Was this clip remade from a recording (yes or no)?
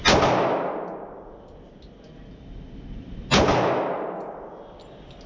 no